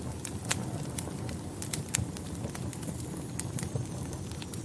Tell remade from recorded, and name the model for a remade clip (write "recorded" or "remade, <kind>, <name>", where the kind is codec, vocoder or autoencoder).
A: recorded